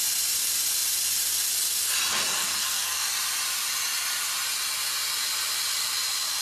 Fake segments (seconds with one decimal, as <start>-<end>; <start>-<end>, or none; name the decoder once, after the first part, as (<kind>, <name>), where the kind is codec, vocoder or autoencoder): 2.4-3.1 (codec, SNAC)